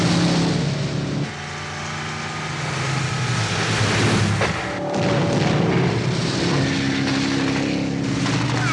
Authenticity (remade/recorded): recorded